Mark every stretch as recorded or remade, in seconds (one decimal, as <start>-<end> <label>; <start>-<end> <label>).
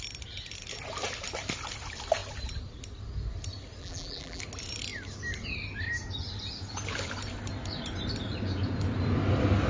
0.0-3.8 recorded; 3.8-4.4 remade; 4.4-9.7 recorded